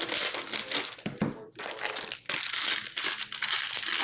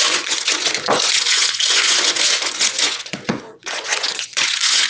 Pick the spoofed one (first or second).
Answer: second